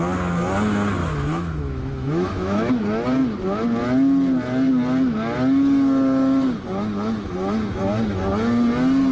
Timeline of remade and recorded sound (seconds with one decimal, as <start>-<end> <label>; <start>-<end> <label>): 0.0-1.0 recorded; 1.0-2.7 remade; 2.7-9.1 recorded